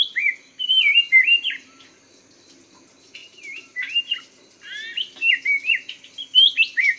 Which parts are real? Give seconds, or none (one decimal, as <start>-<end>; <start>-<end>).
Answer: 0.0-3.2; 4.6-7.0